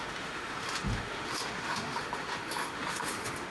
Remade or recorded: remade